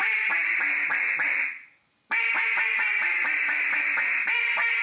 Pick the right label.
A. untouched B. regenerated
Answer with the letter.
A